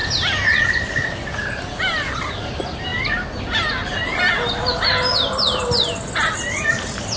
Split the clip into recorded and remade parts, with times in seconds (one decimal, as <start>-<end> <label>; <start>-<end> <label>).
0.0-7.2 recorded